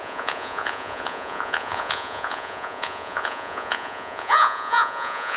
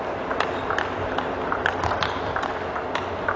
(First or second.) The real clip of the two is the second